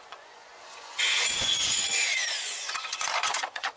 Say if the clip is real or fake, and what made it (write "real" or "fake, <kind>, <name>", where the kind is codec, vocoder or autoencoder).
fake, vocoder, Vocos